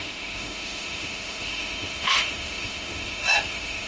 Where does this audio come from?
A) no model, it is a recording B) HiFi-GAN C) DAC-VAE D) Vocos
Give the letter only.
C